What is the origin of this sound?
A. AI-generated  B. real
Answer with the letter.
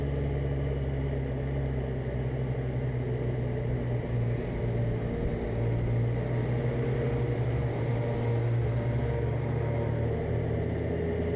B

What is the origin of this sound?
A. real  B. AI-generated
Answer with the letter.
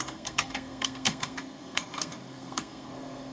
B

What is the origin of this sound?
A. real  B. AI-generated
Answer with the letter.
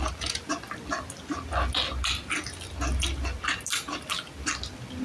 A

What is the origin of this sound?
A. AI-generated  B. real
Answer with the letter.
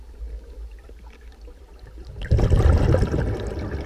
B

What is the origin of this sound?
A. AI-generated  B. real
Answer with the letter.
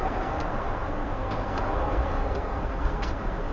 A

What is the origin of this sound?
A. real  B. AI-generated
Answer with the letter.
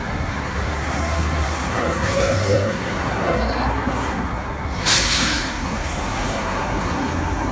B